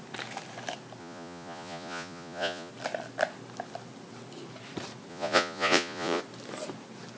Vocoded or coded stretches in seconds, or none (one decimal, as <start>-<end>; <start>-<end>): 1.0-2.7; 5.1-6.2